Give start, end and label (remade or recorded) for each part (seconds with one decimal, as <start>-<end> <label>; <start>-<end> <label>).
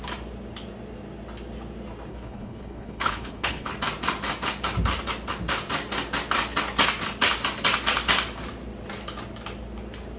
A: 0.0-2.1 recorded; 2.1-3.7 remade; 3.7-10.2 recorded